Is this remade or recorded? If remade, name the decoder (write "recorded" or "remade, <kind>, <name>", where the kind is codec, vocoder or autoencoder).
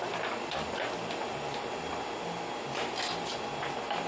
remade, vocoder, BigVGAN v2